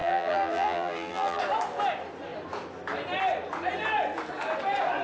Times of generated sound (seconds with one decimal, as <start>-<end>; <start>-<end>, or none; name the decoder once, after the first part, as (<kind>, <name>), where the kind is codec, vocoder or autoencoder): 0.0-1.4 (vocoder, BigVGAN v2)